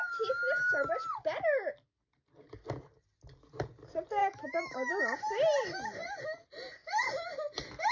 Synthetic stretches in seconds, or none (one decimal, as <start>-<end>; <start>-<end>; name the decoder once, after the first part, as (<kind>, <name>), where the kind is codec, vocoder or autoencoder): 4.2-5.0 (autoencoder, DAC-VAE)